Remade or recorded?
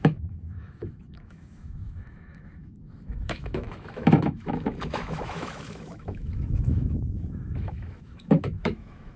remade